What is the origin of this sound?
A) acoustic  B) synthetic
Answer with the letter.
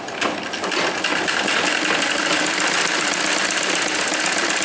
A